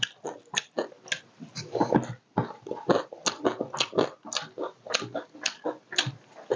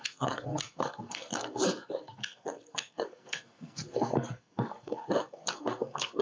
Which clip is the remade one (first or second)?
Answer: second